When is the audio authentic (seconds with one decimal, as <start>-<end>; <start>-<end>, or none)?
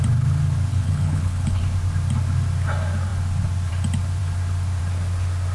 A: 0.0-0.7; 1.6-5.5